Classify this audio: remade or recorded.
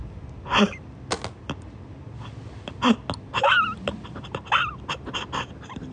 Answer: recorded